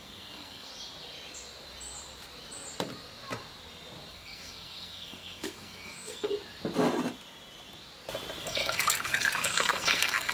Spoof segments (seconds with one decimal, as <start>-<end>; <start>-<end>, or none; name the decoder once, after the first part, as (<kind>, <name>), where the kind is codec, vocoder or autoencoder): 0.0-0.7 (codec, SNAC); 4.1-6.3; 8.4-10.3